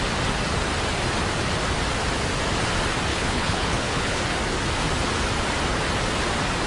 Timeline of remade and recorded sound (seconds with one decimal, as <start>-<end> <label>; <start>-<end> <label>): 0.0-3.1 recorded; 3.1-4.2 remade; 4.2-6.7 recorded